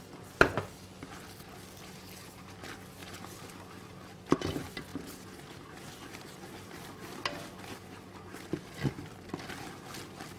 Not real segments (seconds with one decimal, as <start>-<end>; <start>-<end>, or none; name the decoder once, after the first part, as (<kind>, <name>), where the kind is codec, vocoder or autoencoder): none